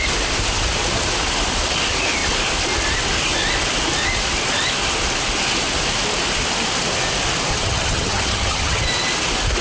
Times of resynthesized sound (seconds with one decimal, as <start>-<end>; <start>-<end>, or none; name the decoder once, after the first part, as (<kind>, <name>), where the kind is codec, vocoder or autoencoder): 7.5-8.8 (vocoder, HiFi-GAN)